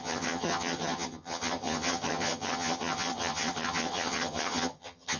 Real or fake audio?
fake